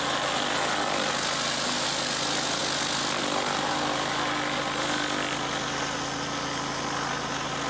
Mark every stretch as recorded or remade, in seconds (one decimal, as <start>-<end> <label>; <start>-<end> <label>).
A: 0.0-7.7 recorded